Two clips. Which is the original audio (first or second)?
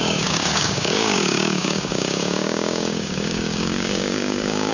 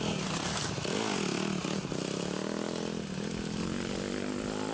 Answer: second